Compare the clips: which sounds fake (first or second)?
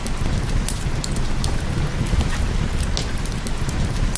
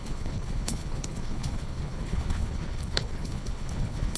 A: second